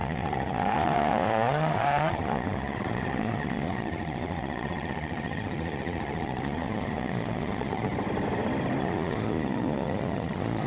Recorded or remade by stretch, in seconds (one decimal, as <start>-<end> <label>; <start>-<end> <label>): 0.0-7.9 remade; 7.9-8.8 recorded; 8.8-10.7 remade